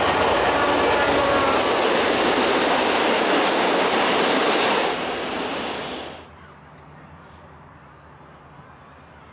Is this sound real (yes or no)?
yes